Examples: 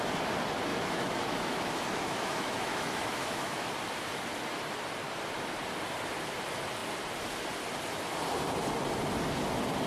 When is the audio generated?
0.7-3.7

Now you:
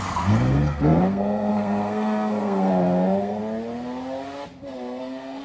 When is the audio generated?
0.0-3.4; 4.6-5.4